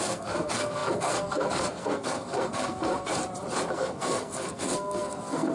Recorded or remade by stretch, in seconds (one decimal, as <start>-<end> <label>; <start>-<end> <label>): 0.0-3.1 remade; 3.1-3.7 recorded; 3.7-5.5 remade